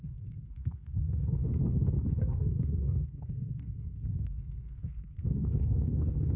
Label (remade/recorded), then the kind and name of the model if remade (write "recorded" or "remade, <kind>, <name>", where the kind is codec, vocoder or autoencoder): remade, codec, SNAC